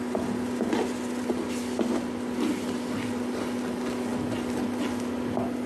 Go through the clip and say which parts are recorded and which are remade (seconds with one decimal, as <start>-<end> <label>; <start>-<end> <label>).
0.0-5.7 recorded